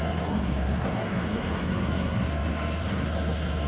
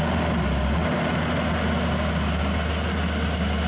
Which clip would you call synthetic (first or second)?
first